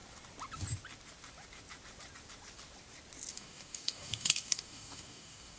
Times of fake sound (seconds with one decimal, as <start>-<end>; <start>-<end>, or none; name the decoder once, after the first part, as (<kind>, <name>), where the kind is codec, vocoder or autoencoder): 3.3-5.6 (codec, DAC)